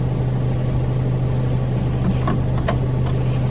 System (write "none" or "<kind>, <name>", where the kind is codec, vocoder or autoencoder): none